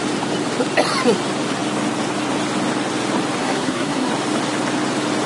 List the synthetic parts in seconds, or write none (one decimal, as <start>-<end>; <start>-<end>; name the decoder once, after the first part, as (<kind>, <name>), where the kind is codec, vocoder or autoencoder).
3.4-4.1 (codec, SNAC)